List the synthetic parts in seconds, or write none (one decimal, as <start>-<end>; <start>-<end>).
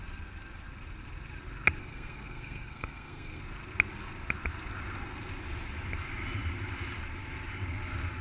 1.8-3.4